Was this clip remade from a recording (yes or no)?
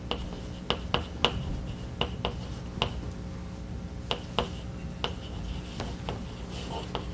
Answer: no